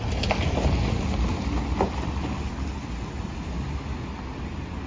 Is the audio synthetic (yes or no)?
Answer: no